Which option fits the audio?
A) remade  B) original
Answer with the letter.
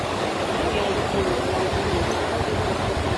B